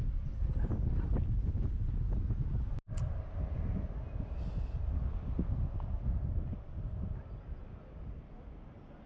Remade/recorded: recorded